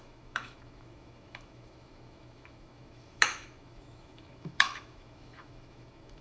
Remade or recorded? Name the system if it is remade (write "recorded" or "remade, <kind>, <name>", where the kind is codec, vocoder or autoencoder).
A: remade, autoencoder, DAC-VAE